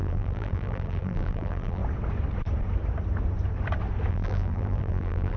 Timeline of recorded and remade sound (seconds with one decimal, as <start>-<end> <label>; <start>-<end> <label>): 0.0-1.8 remade; 1.8-4.1 recorded; 4.1-5.4 remade